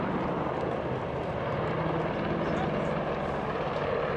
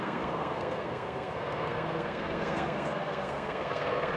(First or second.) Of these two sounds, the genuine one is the first